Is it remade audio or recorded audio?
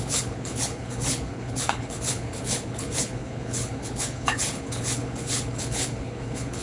remade